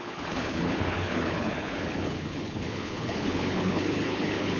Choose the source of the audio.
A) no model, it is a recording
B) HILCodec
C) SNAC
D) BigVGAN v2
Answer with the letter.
B